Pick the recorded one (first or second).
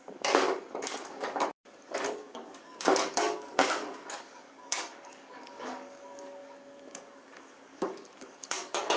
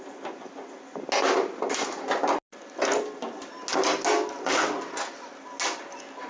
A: second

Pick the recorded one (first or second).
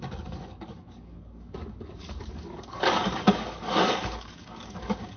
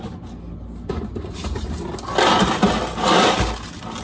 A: second